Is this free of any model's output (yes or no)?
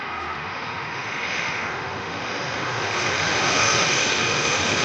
no